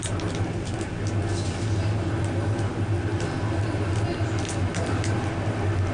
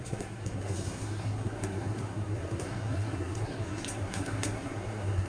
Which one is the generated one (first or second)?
second